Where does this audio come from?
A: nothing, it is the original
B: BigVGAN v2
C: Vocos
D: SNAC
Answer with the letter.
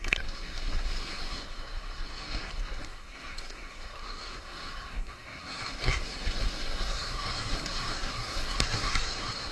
D